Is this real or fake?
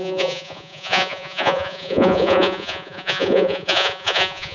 fake